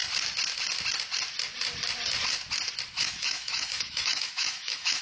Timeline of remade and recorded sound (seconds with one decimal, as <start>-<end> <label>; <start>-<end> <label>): 0.0-3.0 recorded; 3.0-5.0 remade